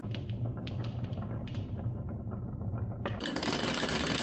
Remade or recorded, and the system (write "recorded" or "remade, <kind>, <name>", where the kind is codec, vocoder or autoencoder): remade, vocoder, BigVGAN v2